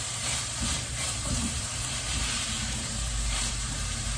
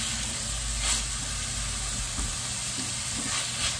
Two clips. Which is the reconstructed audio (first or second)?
first